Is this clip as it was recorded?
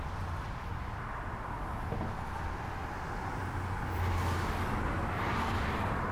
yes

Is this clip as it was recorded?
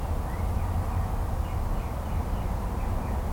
yes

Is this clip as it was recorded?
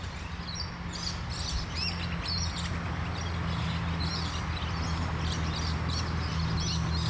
yes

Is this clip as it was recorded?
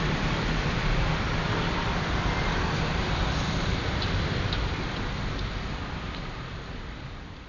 no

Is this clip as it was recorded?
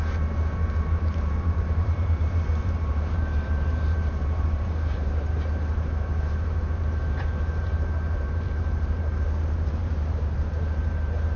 no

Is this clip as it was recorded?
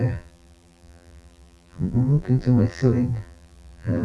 no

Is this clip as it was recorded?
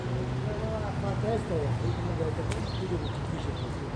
yes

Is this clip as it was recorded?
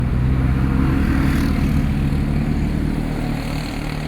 yes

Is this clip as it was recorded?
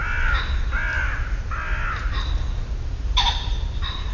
yes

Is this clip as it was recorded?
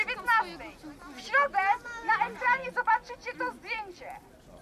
yes